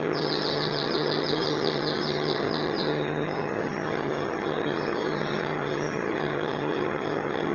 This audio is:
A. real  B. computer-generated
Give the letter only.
B